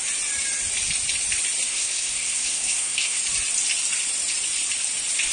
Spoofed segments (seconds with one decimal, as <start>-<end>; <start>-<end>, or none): 1.7-3.2